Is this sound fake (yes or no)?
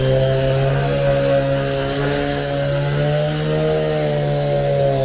no